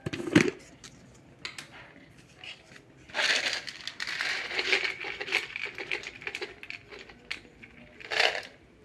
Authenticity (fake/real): real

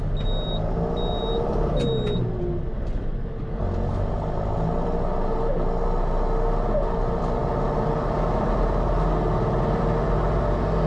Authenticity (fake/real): real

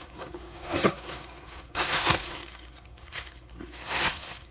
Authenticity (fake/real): fake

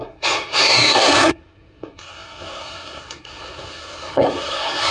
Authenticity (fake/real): fake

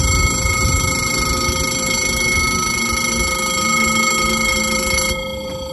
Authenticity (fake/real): real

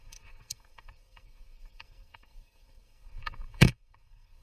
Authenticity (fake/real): fake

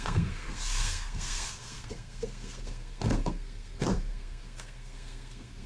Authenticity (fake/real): fake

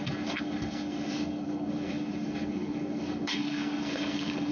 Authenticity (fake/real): fake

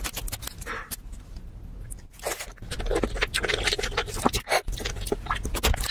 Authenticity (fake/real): real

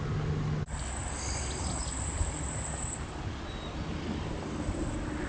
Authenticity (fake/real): real